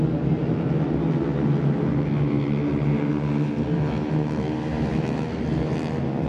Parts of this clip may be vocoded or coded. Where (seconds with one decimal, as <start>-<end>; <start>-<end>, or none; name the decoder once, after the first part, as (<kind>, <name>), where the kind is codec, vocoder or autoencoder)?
none